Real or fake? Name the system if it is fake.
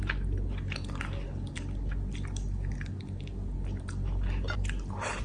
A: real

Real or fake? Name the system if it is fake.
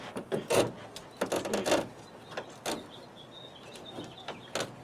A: real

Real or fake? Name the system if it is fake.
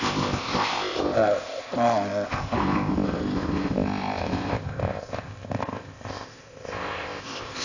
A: fake, codec, ZipCodec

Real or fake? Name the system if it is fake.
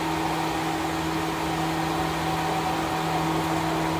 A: real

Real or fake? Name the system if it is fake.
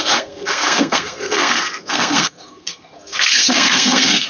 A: fake, codec, SNAC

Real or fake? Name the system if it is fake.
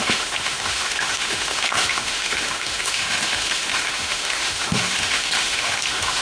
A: fake, autoencoder, DAC-VAE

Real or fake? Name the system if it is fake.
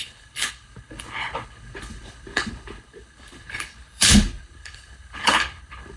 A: fake, codec, HILCodec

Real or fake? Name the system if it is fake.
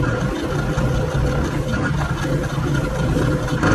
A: real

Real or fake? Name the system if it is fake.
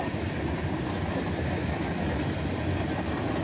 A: real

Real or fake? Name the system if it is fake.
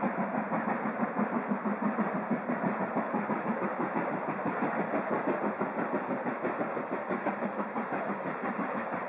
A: fake, vocoder, BigVGAN v2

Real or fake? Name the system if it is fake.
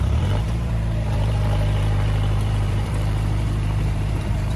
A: fake, vocoder, BigVGAN v2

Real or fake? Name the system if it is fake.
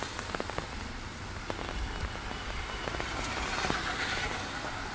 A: real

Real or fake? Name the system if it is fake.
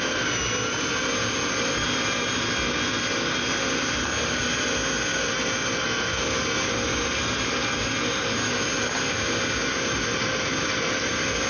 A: real